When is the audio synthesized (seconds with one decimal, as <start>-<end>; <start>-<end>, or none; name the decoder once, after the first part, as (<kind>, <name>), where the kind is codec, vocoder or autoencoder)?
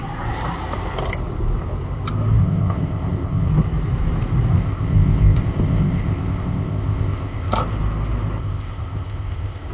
2.4-3.5 (codec, ZipCodec); 4.6-7.5; 8.4-9.7